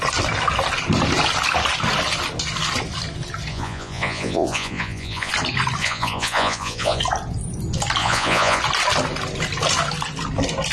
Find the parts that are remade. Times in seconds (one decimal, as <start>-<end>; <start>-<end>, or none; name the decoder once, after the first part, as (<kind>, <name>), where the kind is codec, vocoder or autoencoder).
3.5-5.3 (vocoder, Vocos); 5.8-7.0; 8.0-8.6